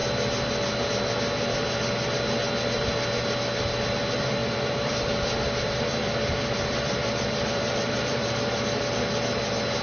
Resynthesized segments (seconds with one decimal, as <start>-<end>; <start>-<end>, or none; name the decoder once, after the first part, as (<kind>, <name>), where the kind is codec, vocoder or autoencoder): 4.4-8.8 (vocoder, BigVGAN v2)